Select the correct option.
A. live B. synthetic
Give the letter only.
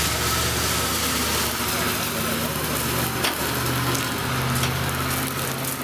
A